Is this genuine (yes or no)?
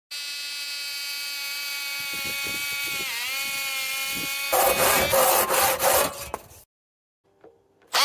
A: yes